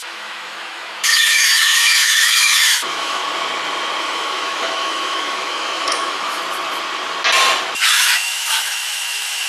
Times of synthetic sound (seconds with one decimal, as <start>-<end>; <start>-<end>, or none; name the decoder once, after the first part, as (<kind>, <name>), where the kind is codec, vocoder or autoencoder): 0.0-3.2 (autoencoder, DAC-VAE); 4.0-6.4; 7.9-9.5